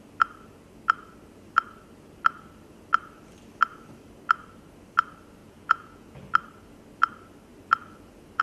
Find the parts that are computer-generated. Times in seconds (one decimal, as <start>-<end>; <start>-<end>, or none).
5.4-6.2